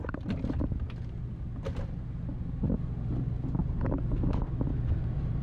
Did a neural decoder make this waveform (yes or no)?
no